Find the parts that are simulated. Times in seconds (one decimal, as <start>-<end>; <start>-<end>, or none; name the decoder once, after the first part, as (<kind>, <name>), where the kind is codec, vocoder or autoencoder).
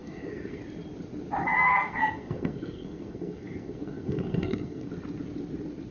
0.0-0.6 (codec, SNAC); 1.4-4.9